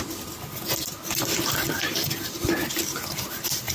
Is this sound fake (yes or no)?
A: no